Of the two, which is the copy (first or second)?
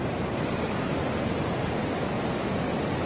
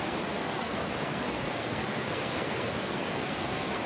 second